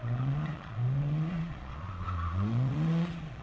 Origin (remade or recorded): remade